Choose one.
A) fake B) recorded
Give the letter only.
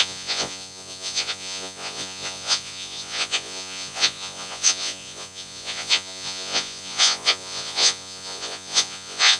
A